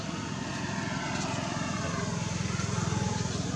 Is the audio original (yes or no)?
yes